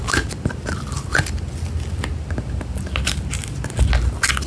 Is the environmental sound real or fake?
real